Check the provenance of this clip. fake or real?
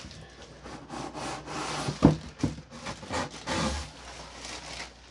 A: real